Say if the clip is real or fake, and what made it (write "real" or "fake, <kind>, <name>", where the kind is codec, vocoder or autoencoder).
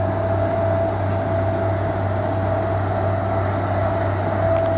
real